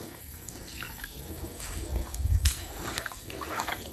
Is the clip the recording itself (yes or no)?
no